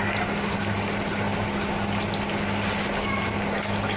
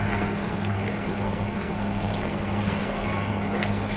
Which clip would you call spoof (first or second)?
second